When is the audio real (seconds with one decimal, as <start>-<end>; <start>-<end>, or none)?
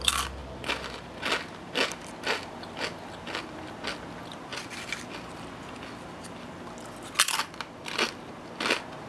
0.0-9.1